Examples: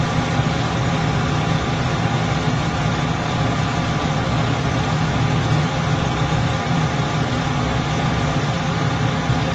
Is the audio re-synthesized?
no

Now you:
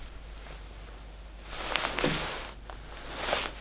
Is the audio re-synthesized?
no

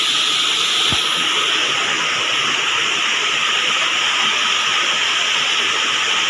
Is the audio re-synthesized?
no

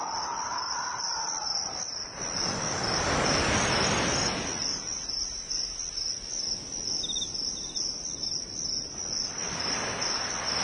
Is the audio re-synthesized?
no